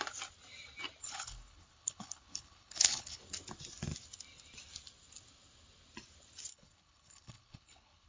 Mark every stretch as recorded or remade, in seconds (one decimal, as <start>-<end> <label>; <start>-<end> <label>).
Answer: 0.0-1.0 recorded; 1.0-3.2 remade; 3.2-6.5 recorded; 6.5-8.1 remade